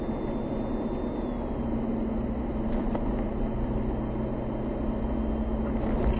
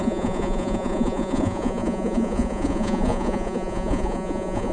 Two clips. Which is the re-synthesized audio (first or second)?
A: second